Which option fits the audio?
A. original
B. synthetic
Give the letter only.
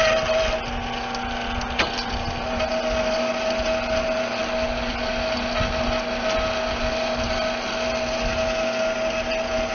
A